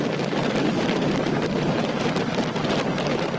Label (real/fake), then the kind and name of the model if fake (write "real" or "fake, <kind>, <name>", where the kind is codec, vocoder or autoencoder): real